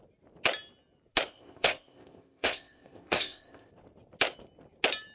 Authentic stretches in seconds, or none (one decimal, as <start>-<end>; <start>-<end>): 0.0-1.3; 3.7-5.1